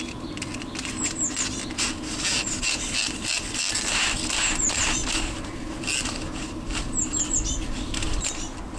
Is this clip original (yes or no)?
yes